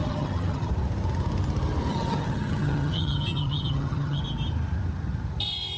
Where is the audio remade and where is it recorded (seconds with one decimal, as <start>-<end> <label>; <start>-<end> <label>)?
0.0-0.7 remade; 0.7-1.9 recorded; 1.9-4.2 remade; 4.2-5.8 recorded